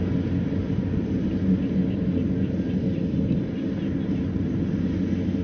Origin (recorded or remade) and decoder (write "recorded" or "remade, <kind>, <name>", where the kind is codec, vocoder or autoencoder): recorded